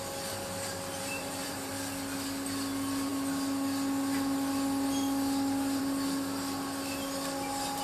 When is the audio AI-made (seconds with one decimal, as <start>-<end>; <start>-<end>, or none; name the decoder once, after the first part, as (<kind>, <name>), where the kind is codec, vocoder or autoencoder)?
1.0-1.7 (vocoder, BigVGAN v2)